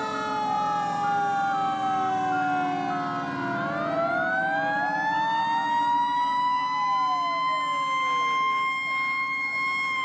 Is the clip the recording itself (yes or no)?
yes